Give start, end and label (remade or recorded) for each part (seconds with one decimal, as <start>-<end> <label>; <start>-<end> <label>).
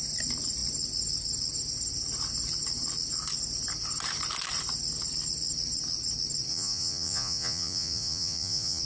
0.0-6.5 recorded; 6.5-8.8 remade